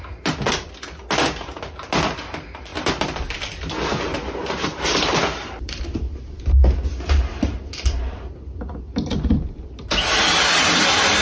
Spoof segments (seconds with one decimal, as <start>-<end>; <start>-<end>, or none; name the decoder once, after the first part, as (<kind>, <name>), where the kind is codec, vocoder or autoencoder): 2.7-5.8 (vocoder, BigVGAN v2)